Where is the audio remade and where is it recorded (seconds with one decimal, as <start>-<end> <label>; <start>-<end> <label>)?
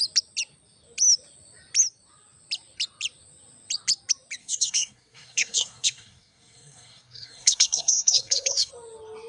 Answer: 0.0-4.4 recorded; 4.4-8.7 remade; 8.7-9.3 recorded